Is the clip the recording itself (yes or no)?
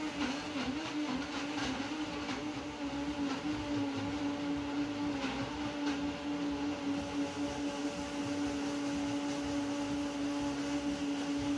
yes